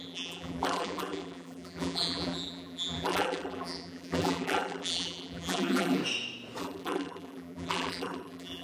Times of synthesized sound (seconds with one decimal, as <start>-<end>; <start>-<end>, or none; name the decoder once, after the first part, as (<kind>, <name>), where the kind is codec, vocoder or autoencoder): 0.0-6.0 (vocoder, BigVGAN v2); 6.6-8.6